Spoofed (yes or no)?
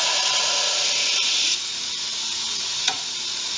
yes